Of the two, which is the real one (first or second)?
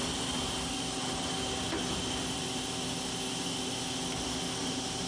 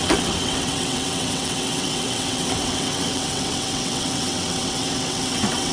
first